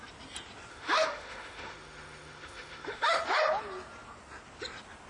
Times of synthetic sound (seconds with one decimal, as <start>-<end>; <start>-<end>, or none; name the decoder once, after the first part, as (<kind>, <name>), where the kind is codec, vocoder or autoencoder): 0.7-3.2 (autoencoder, DAC-VAE)